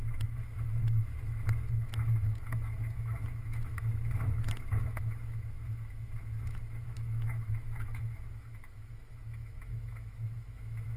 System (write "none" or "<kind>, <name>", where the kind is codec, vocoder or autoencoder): autoencoder, DAC-VAE